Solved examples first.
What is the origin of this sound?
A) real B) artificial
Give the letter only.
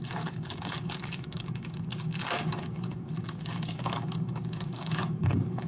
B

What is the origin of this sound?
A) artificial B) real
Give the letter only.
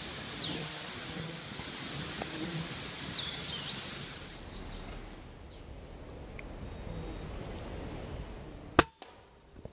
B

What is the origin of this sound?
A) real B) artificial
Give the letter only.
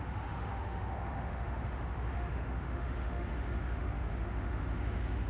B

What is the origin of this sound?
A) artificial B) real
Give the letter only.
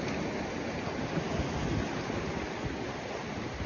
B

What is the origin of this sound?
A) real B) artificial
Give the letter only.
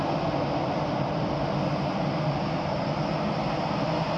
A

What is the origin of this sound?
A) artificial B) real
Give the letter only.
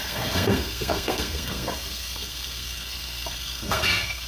A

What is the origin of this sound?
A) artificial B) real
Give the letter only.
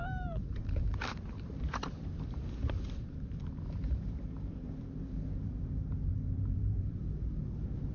A